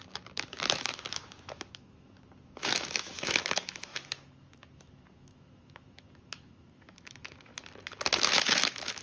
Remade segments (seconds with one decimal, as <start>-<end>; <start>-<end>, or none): 0.0-7.5; 8.1-9.0

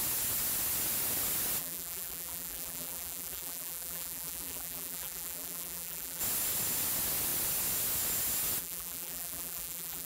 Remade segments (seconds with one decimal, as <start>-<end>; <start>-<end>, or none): 1.6-6.2; 8.6-10.1

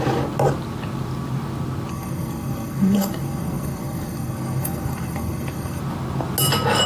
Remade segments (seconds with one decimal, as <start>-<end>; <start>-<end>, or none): 1.9-5.8

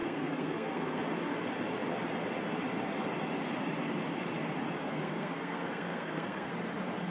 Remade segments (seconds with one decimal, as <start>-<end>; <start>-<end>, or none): 0.0-1.0; 4.8-6.5

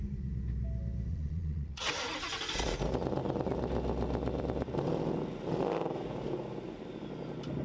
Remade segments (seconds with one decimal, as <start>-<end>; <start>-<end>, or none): 1.1-1.9

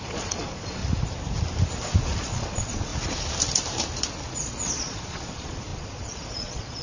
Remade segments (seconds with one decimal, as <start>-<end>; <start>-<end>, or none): 0.0-0.8; 2.0-2.9; 4.3-6.8

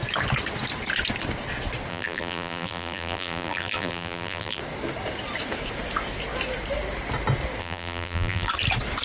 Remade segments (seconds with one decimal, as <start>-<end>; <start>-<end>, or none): 1.9-4.6; 7.6-8.5